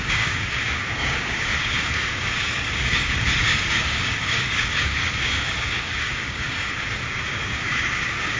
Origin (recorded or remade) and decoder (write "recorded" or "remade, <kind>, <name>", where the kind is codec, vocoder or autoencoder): remade, codec, DAC